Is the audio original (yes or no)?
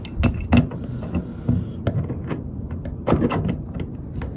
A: yes